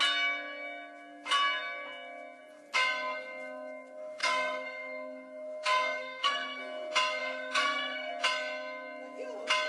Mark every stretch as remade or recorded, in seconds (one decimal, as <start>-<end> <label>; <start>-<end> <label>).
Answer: 0.0-4.2 recorded; 4.2-6.6 remade; 6.6-7.2 recorded; 7.2-8.1 remade; 8.1-9.7 recorded